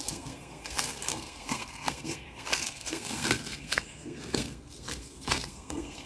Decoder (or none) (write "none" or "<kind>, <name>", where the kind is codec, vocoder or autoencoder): codec, SNAC